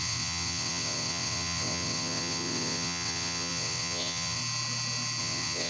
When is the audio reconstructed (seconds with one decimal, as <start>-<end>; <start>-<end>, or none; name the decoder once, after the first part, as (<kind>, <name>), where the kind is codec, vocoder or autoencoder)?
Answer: 0.0-4.4 (vocoder, WaveNeXt); 5.2-5.7